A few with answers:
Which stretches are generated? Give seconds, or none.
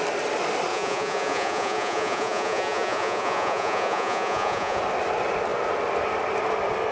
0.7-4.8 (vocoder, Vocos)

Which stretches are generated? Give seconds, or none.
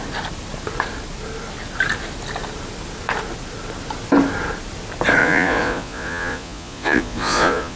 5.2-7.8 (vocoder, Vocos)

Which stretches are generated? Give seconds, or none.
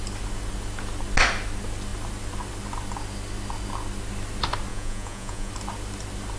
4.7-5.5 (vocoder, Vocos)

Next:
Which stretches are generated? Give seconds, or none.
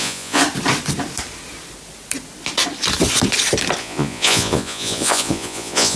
0.0-0.4 (vocoder, Vocos); 3.8-6.0